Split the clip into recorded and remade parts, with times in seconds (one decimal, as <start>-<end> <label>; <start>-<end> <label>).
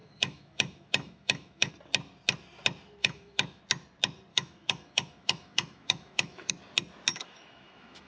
0.0-1.7 remade; 1.7-3.0 recorded; 3.0-3.6 remade; 3.6-4.3 recorded; 4.3-6.5 remade; 6.5-7.1 recorded; 7.1-8.1 remade